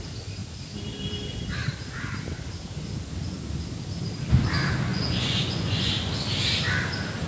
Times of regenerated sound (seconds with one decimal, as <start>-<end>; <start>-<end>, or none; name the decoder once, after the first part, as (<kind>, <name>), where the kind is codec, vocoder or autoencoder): 4.9-5.9 (vocoder, Vocos)